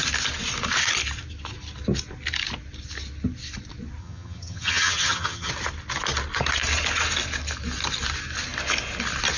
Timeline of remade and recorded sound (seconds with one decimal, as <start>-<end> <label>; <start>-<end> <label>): 0.0-4.0 recorded; 4.0-5.5 remade; 5.5-9.4 recorded